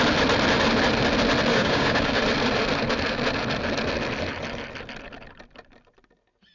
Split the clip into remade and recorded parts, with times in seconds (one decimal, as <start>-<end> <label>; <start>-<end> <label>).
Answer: 0.0-1.5 recorded; 1.5-2.2 remade; 2.2-6.5 recorded